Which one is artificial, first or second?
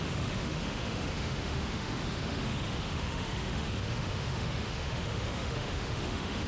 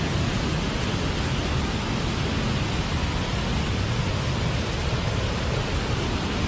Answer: first